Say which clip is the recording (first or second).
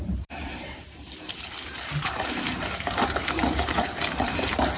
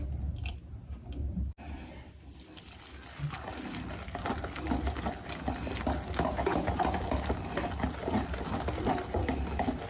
second